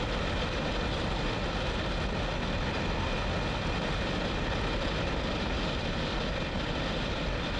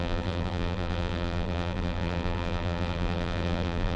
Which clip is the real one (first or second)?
first